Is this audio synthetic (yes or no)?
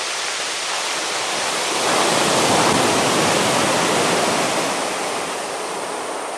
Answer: no